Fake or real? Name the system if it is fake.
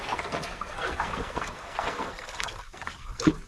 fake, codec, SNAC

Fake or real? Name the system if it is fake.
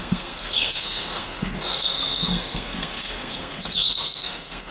fake, codec, SNAC